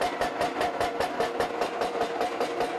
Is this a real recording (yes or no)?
yes